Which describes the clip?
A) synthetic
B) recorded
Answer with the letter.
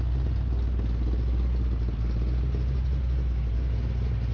B